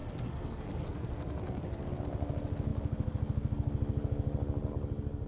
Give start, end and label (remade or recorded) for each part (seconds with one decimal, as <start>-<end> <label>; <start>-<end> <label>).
0.0-1.9 remade; 1.9-5.3 recorded